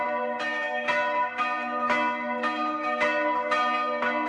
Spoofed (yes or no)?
no